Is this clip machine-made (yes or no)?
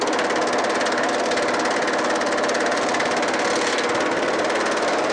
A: no